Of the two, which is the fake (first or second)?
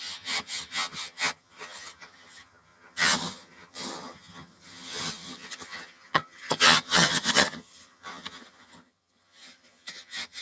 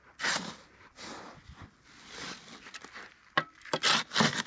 first